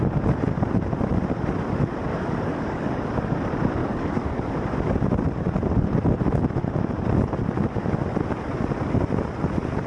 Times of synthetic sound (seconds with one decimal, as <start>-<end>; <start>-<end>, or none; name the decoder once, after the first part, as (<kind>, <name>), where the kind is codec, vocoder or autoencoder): 2.1-3.0 (codec, DAC); 3.8-4.5